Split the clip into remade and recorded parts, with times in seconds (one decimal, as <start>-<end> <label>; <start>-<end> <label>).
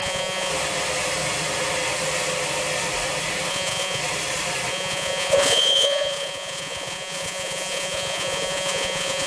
0.0-0.5 remade; 0.5-3.5 recorded; 3.5-4.0 remade; 4.0-4.7 recorded; 4.7-9.3 remade